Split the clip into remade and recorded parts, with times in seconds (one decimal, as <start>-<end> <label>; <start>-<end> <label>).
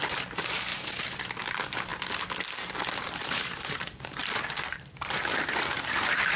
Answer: 0.0-0.7 remade; 0.7-1.4 recorded; 1.4-1.9 remade; 1.9-3.0 recorded; 3.0-4.2 remade; 4.2-4.7 recorded; 4.7-6.4 remade